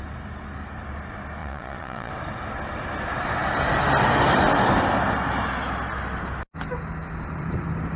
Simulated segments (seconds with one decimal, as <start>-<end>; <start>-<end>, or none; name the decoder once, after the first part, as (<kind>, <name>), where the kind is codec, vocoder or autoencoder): 1.4-2.1 (vocoder, Vocos)